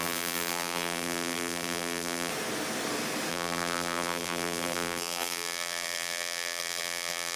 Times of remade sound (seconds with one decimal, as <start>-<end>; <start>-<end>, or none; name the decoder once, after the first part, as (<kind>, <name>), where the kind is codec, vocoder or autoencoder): 0.0-2.3 (vocoder, BigVGAN v2); 3.3-7.4